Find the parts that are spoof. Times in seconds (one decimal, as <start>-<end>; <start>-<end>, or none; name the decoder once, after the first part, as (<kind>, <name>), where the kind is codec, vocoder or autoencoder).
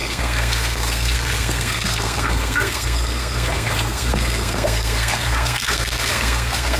0.0-6.8 (codec, SNAC)